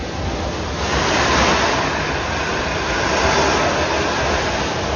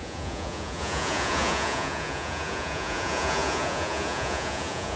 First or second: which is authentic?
first